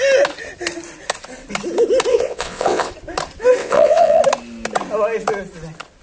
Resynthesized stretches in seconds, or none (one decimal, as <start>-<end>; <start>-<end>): 2.1-2.9; 3.6-4.2